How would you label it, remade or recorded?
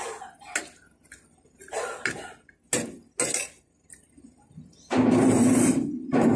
recorded